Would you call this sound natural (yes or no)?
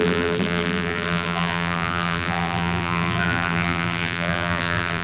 no